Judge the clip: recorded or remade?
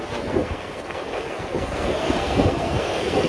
remade